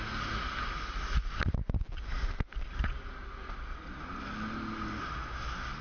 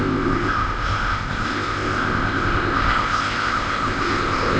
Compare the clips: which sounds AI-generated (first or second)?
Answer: second